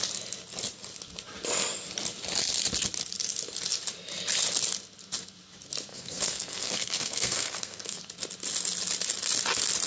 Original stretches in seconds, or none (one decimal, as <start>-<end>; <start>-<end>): 0.0-5.9; 8.0-9.9